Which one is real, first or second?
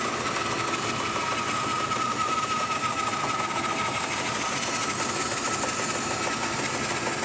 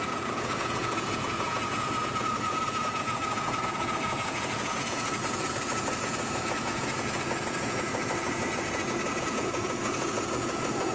first